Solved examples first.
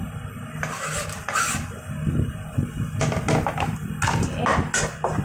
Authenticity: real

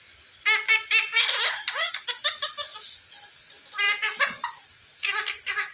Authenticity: real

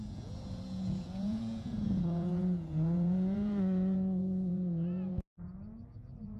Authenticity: fake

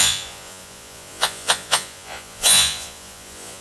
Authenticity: fake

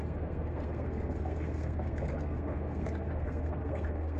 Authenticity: fake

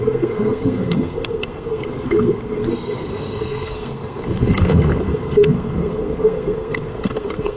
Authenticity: fake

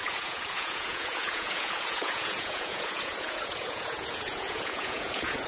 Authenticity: fake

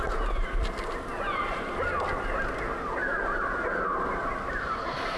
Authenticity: real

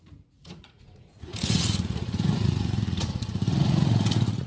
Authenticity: fake